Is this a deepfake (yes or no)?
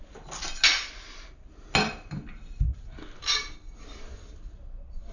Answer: no